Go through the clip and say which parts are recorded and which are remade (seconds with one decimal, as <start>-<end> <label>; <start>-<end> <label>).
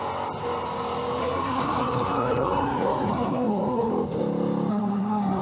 0.0-1.2 recorded; 1.2-3.9 remade; 3.9-4.7 recorded; 4.7-5.4 remade